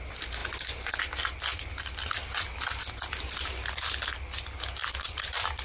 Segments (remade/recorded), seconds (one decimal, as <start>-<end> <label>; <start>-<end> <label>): 0.0-1.5 recorded; 1.5-2.2 remade; 2.2-4.8 recorded; 4.8-5.6 remade